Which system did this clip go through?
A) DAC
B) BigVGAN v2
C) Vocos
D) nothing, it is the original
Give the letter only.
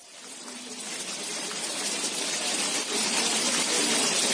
D